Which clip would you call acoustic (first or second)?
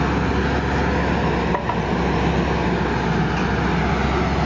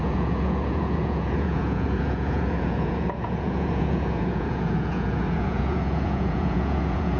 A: first